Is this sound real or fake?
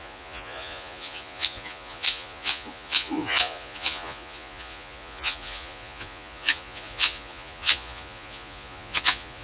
fake